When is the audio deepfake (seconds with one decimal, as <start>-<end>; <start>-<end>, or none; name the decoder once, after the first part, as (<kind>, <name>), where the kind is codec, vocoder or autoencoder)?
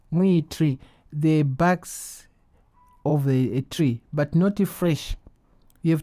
0.0-0.8 (codec, SNAC); 4.7-5.6